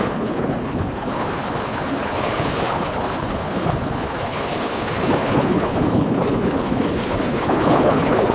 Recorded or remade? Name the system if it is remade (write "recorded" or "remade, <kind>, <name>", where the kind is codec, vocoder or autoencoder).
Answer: remade, codec, HILCodec